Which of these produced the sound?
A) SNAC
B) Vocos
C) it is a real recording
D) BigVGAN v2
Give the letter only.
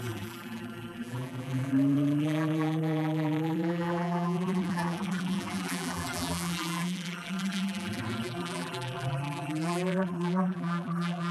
D